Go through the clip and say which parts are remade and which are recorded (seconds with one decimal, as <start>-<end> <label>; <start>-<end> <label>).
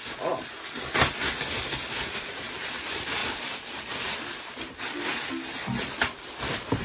0.0-6.8 recorded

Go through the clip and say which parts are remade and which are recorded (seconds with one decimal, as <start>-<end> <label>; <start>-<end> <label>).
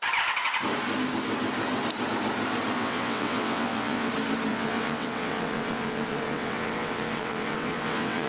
0.0-2.8 recorded; 2.8-4.1 remade; 4.1-4.5 recorded; 4.5-8.3 remade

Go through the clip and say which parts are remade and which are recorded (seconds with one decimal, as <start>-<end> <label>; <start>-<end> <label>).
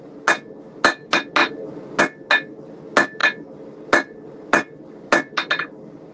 0.0-6.1 recorded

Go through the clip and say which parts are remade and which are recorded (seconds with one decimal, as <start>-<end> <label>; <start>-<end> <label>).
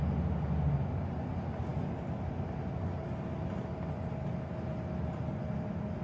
0.0-6.0 recorded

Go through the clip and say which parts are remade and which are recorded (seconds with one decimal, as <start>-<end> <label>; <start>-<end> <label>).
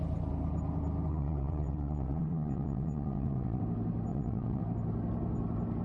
0.0-1.1 recorded; 1.1-3.6 remade; 3.6-4.1 recorded; 4.1-4.6 remade; 4.6-5.8 recorded